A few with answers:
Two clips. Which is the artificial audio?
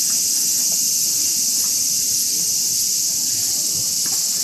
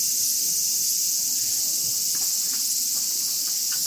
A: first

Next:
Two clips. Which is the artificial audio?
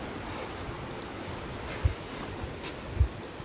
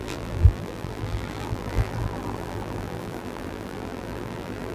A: second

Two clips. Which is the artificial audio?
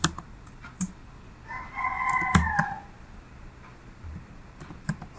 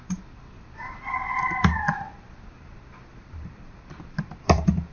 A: second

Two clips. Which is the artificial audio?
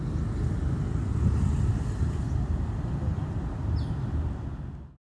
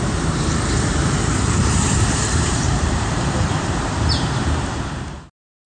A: second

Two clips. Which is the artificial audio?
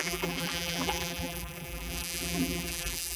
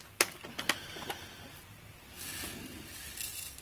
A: first